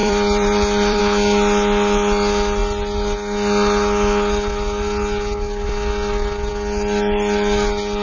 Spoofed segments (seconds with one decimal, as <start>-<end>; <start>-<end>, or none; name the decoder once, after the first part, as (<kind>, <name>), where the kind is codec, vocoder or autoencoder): 0.0-1.0 (vocoder, BigVGAN v2)